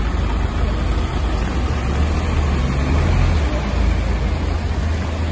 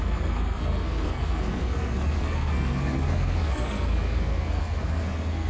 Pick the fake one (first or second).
second